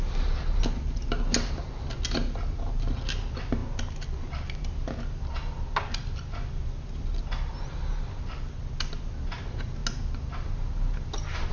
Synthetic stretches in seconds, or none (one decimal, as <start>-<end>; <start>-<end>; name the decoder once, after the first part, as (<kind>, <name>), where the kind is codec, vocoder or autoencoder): none